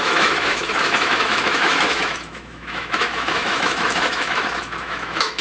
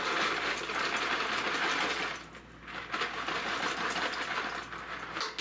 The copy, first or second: first